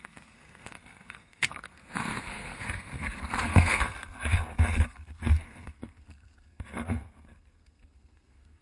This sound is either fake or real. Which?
fake